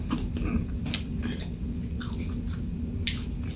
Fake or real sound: real